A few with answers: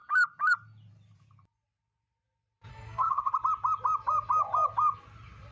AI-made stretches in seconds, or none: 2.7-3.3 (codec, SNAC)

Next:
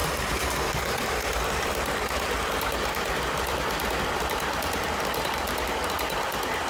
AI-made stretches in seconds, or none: 0.0-4.0 (vocoder, BigVGAN v2)